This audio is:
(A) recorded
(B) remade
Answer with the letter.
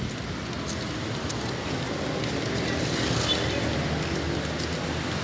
A